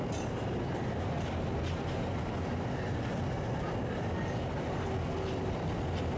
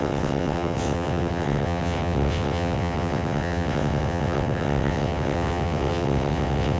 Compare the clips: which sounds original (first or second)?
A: first